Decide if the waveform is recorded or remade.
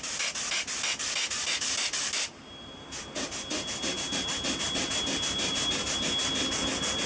recorded